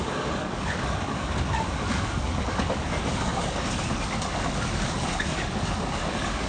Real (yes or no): no